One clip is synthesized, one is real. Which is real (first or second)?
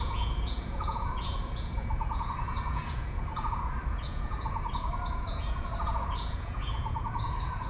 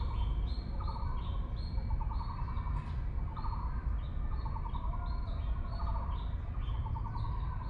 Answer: second